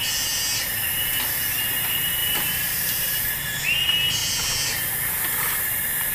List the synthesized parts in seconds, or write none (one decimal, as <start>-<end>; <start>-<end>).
2.2-3.3